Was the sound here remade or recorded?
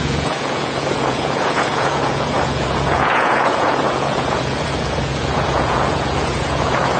remade